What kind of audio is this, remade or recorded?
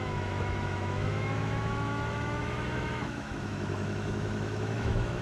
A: remade